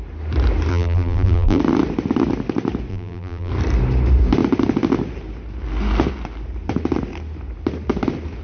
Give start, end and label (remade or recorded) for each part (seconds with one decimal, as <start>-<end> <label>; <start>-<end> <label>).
0.0-0.7 recorded; 0.7-1.6 remade; 1.6-2.9 recorded; 2.9-3.5 remade; 3.5-8.4 recorded